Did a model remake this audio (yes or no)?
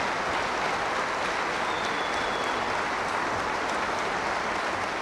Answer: no